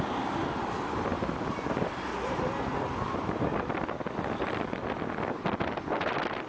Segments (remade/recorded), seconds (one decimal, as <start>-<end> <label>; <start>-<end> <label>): 0.0-6.5 recorded